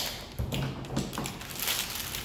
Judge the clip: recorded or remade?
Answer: recorded